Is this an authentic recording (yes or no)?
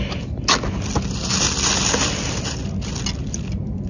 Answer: yes